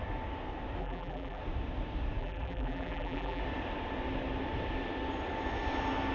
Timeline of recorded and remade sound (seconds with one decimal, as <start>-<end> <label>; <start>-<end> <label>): 0.0-0.8 recorded; 0.8-1.4 remade; 1.4-2.2 recorded; 2.2-3.4 remade; 3.4-6.1 recorded